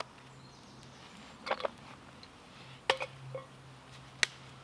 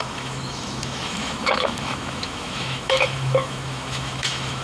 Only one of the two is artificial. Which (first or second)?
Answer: second